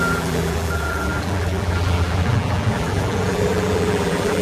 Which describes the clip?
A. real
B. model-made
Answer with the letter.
B